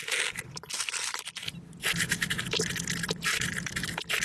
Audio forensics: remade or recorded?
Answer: recorded